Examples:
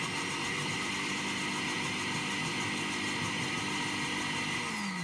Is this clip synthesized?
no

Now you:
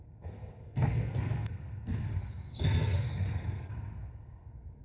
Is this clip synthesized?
yes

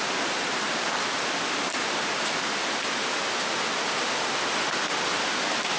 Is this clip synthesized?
no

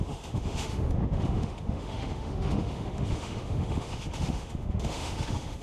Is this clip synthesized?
yes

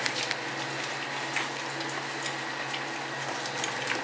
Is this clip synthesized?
no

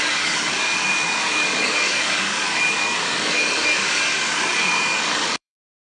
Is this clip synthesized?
yes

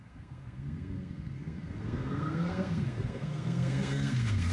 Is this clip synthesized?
yes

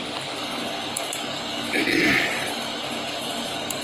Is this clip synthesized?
yes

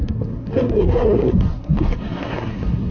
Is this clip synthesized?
yes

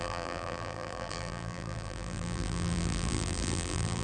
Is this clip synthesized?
yes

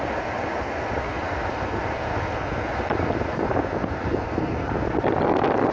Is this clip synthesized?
no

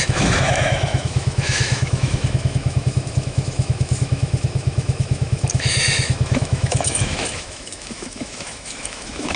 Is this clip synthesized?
yes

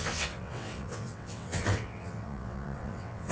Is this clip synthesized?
yes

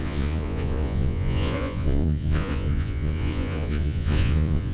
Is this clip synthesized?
yes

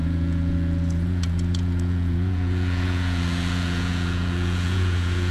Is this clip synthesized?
yes